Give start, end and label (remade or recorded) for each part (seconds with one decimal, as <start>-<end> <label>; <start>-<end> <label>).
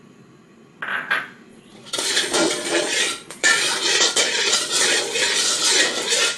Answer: 0.0-1.5 recorded; 1.5-5.0 remade; 5.0-6.4 recorded